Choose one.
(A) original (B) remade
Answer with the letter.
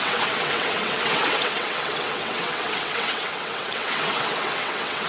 B